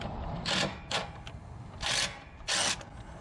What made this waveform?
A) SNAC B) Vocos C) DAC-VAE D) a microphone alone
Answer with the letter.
D